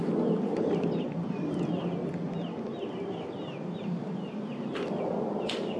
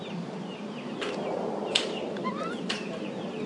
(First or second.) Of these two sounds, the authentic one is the first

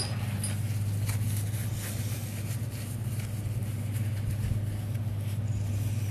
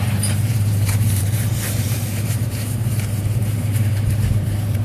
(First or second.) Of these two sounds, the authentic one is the first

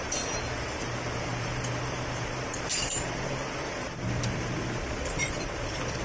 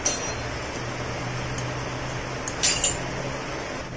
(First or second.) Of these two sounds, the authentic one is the second